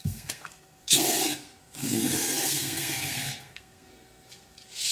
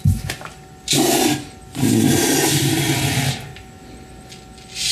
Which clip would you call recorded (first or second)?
second